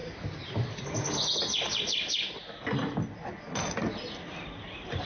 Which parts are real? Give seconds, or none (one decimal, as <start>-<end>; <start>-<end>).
0.0-5.1